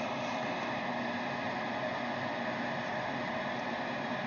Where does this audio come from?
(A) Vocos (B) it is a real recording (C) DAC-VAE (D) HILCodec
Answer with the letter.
B